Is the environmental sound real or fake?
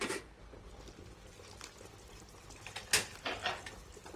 real